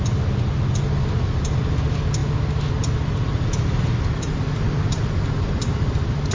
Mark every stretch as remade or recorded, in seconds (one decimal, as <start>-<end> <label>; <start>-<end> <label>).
0.0-6.3 recorded

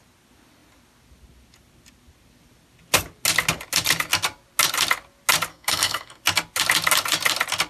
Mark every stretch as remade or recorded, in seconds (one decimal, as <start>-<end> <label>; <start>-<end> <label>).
0.0-5.5 recorded; 5.5-6.2 remade; 6.2-7.7 recorded

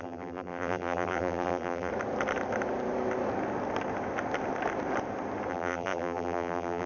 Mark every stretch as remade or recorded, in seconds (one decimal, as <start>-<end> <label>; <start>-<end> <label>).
0.0-1.9 remade; 1.9-5.5 recorded; 5.5-6.9 remade

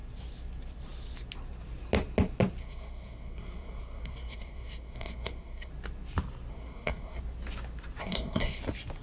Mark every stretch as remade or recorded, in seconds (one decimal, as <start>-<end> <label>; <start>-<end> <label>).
0.0-2.6 recorded; 2.6-5.7 remade; 5.7-6.5 recorded; 6.5-7.2 remade; 7.2-8.0 recorded; 8.0-8.6 remade; 8.6-9.0 recorded

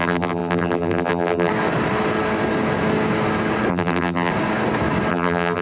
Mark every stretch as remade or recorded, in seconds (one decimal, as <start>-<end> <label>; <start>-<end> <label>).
0.0-1.5 remade; 1.5-3.7 recorded; 3.7-4.3 remade; 4.3-5.1 recorded; 5.1-5.6 remade

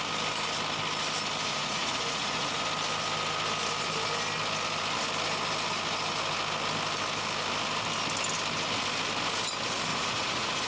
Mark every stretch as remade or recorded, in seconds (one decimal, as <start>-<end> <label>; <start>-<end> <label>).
0.0-1.5 recorded; 1.5-2.6 remade; 2.6-9.9 recorded; 9.9-10.7 remade

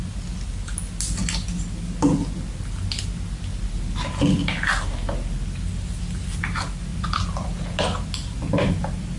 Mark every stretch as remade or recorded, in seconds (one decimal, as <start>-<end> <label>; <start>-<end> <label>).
0.0-6.9 recorded; 6.9-7.8 remade; 7.8-9.2 recorded

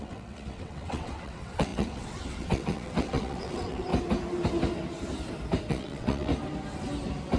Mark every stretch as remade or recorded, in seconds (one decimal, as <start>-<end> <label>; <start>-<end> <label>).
0.0-3.9 remade; 3.9-5.7 recorded; 5.7-6.3 remade; 6.3-7.4 recorded